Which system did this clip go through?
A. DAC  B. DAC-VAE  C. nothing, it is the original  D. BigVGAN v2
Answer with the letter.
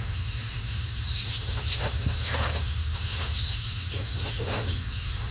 B